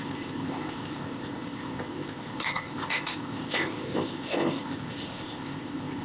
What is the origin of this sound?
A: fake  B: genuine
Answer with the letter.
A